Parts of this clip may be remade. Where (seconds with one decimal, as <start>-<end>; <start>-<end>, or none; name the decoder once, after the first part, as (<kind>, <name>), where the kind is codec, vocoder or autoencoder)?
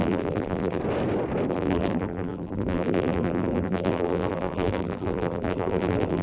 0.0-0.8 (vocoder, BigVGAN v2); 1.5-6.2